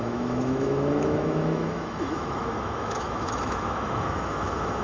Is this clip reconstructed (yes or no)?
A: yes